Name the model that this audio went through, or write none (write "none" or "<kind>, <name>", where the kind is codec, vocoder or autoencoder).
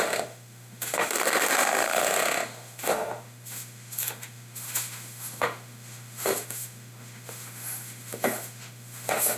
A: autoencoder, DAC-VAE